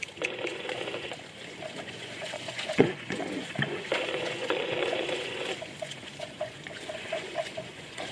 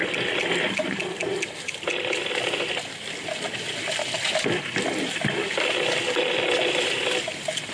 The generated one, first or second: first